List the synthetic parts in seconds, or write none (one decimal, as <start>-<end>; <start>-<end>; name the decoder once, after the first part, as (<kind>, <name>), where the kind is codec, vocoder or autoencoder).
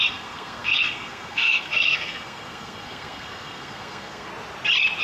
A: 0.0-4.3 (codec, SNAC)